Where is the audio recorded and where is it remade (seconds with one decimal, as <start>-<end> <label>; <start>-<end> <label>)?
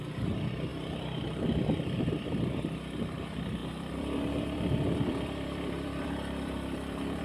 0.0-0.7 recorded; 0.7-2.0 remade; 2.0-3.6 recorded; 3.6-7.2 remade